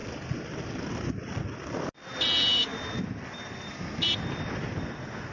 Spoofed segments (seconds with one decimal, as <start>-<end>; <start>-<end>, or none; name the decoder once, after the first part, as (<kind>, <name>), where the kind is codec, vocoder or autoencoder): none